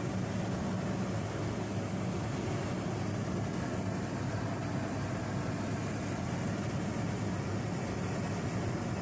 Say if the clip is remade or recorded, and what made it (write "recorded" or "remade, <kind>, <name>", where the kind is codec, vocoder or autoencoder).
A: recorded